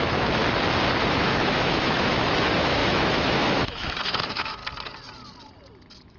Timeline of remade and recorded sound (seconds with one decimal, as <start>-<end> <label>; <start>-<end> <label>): 0.0-0.4 remade; 0.4-1.0 recorded; 1.0-4.6 remade; 4.6-6.2 recorded